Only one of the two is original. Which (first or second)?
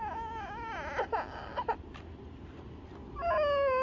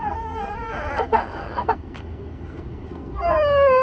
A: first